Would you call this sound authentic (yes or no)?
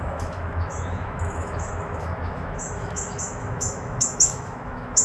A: no